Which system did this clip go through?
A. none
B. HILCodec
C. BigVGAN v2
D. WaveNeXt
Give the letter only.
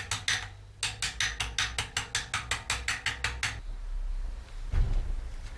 A